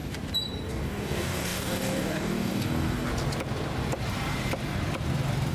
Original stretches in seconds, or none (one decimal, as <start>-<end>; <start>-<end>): 0.0-0.7; 3.1-5.5